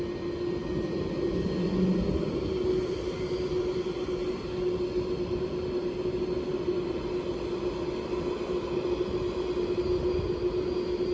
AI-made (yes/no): no